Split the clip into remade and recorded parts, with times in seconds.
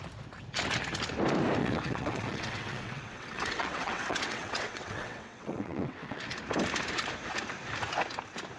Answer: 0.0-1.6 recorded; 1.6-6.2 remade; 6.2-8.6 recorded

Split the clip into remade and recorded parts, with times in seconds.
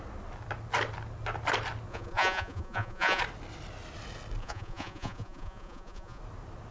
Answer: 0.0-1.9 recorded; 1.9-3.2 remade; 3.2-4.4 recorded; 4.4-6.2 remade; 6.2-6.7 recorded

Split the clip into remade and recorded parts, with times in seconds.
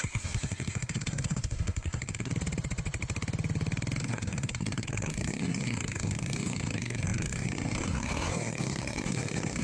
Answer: 0.0-2.3 remade; 2.3-4.0 recorded; 4.0-9.6 remade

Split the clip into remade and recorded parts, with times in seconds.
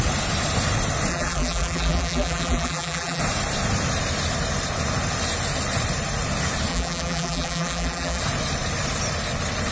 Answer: 0.0-1.1 recorded; 1.1-3.2 remade; 3.2-6.7 recorded; 6.7-8.2 remade; 8.2-9.7 recorded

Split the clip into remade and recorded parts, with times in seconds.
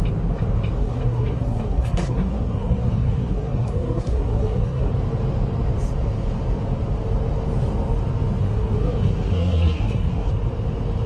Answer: 0.0-0.8 recorded; 0.8-4.9 remade; 4.9-8.4 recorded; 8.4-10.3 remade; 10.3-11.1 recorded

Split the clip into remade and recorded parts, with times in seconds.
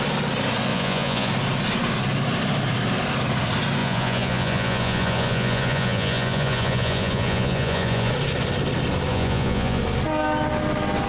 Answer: 0.0-0.7 recorded; 0.7-1.3 remade; 1.3-3.8 recorded; 3.8-8.1 remade; 8.1-9.1 recorded; 9.1-9.8 remade; 9.8-11.1 recorded